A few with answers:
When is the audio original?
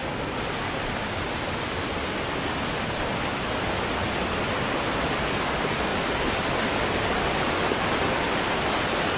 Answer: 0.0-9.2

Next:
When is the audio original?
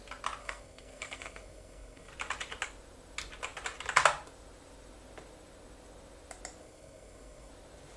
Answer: 0.0-0.4; 2.1-6.6; 7.5-8.0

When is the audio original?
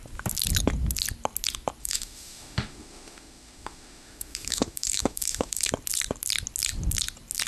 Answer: 0.0-1.8; 5.7-7.5